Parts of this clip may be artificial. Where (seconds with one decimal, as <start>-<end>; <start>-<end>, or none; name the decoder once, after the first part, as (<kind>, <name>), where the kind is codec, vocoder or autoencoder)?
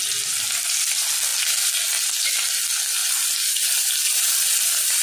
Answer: none